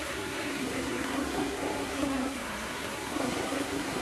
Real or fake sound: fake